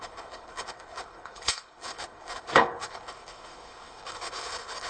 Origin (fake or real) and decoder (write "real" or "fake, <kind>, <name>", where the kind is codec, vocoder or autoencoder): fake, codec, HILCodec